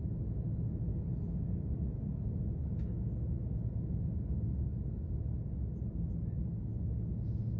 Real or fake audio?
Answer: real